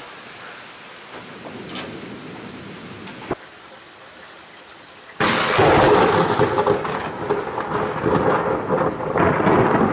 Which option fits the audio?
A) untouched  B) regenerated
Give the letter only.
A